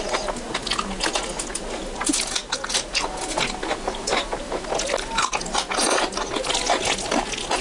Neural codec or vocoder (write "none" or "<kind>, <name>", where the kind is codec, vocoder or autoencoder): none